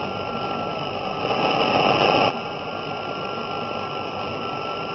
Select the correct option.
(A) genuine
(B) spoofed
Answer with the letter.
A